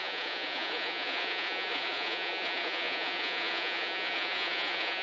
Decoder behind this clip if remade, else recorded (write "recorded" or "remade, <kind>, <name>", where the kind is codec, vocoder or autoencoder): remade, vocoder, Vocos